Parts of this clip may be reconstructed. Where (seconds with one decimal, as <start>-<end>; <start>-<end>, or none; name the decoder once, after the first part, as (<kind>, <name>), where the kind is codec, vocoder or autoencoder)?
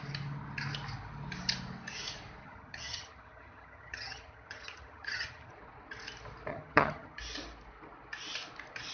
2.4-5.5 (vocoder, HiFi-GAN); 6.5-7.2